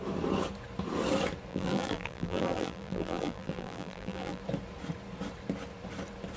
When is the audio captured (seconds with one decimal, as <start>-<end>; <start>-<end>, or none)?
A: 0.0-1.5; 4.4-6.4